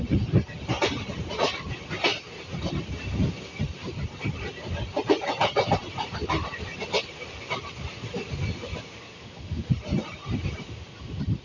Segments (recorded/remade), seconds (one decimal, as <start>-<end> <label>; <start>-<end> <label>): 0.0-11.4 recorded